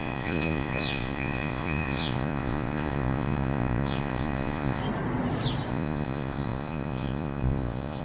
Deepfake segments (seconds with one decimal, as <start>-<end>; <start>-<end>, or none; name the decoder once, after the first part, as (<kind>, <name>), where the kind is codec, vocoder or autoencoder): 0.0-4.8 (vocoder, Vocos); 5.7-8.0